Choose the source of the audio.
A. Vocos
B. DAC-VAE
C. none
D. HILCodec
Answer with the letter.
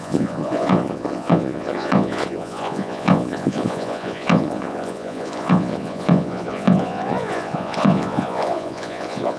A